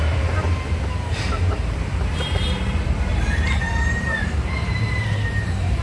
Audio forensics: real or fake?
fake